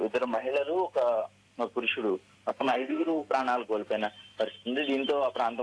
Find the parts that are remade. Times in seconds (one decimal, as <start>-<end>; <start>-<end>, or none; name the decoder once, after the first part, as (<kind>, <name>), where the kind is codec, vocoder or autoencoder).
2.5-3.4 (codec, SNAC)